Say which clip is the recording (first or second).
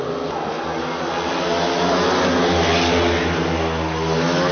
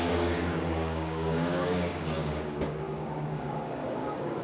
first